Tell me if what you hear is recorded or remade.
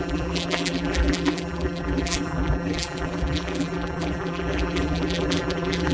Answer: remade